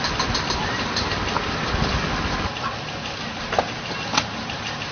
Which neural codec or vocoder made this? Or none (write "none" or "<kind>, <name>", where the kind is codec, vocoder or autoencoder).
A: none